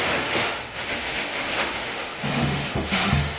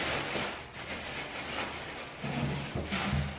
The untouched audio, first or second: second